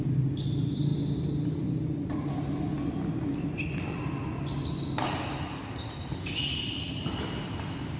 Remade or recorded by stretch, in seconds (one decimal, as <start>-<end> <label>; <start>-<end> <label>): 0.0-8.0 recorded